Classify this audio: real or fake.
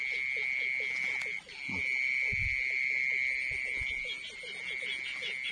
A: real